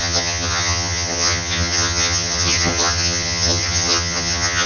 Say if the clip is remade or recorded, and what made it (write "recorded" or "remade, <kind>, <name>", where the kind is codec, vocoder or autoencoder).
remade, vocoder, HiFi-GAN